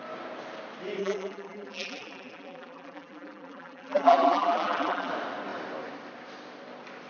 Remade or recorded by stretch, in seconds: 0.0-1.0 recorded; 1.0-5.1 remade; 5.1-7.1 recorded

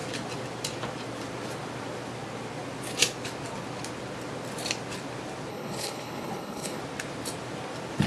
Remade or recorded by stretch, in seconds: 0.0-5.5 recorded; 5.5-6.8 remade; 6.8-8.1 recorded

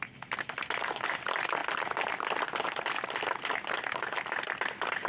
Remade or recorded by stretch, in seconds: 0.0-5.1 recorded

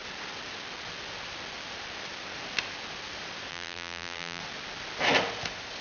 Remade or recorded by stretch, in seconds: 0.0-3.5 recorded; 3.5-4.4 remade; 4.4-5.8 recorded

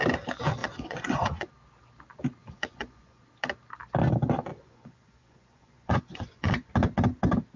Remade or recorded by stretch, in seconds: 0.0-0.6 recorded; 0.6-1.5 remade; 1.5-2.4 recorded; 2.4-3.2 remade; 3.2-4.5 recorded; 4.5-6.7 remade; 6.7-7.6 recorded

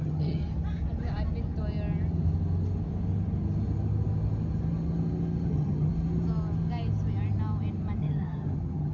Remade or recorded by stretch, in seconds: 0.0-0.4 remade; 0.4-5.5 recorded; 5.5-5.9 remade; 5.9-8.0 recorded; 8.0-8.9 remade

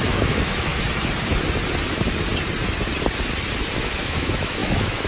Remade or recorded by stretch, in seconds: 0.0-0.7 remade; 0.7-3.8 recorded; 3.8-5.1 remade